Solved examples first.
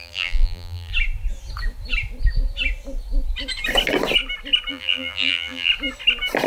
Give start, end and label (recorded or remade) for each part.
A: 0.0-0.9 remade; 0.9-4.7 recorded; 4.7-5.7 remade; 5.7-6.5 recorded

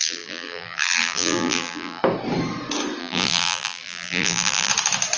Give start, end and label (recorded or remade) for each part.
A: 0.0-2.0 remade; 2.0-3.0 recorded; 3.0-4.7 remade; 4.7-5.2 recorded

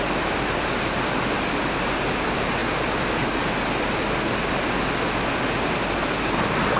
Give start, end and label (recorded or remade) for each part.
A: 0.0-6.8 recorded

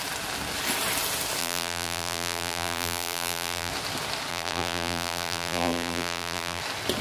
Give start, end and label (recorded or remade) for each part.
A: 0.0-1.4 recorded; 1.4-3.7 remade; 3.7-4.3 recorded; 4.3-6.6 remade; 6.6-7.0 recorded

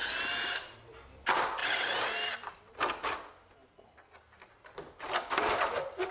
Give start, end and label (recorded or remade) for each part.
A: 0.0-1.1 remade; 1.1-1.6 recorded; 1.6-2.5 remade; 2.5-6.1 recorded

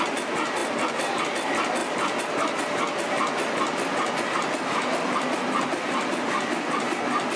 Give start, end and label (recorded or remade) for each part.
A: 0.0-1.8 recorded; 1.8-4.3 remade; 4.3-7.4 recorded